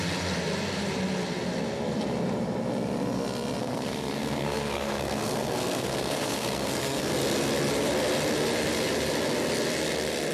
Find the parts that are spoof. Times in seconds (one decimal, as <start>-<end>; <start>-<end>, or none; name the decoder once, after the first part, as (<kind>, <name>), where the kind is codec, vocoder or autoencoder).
3.6-7.1 (codec, SNAC)